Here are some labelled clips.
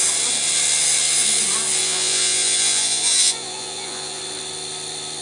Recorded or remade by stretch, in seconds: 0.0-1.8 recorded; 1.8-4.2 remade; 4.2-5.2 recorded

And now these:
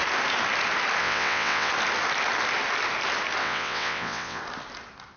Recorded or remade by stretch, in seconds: 0.0-1.0 recorded; 1.0-1.7 remade; 1.7-3.4 recorded; 3.4-4.4 remade; 4.4-5.2 recorded

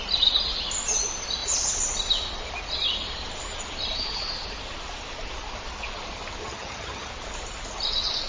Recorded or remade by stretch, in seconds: 0.0-6.4 recorded; 6.4-7.1 remade; 7.1-8.3 recorded

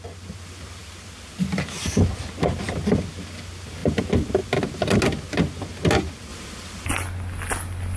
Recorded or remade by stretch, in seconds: 0.0-8.0 recorded